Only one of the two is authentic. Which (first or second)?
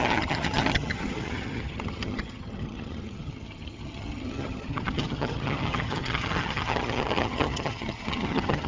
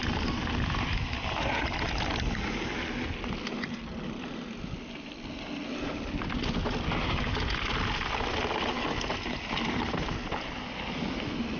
second